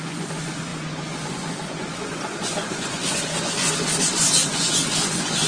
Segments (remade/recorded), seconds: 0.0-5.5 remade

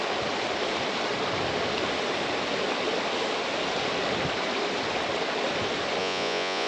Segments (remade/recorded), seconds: 0.0-6.0 recorded; 6.0-6.7 remade

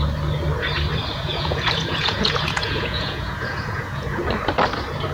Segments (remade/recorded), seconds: 0.0-1.1 recorded; 1.1-4.2 remade; 4.2-5.1 recorded

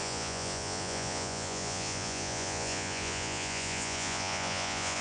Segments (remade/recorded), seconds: 0.0-5.0 remade

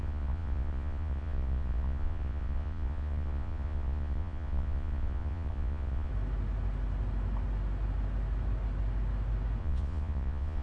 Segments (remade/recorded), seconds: 0.0-6.1 remade; 6.1-9.6 recorded; 9.6-10.6 remade

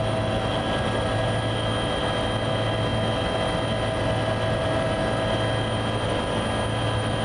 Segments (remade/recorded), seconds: 0.0-7.2 recorded